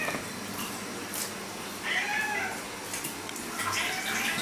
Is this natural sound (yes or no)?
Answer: yes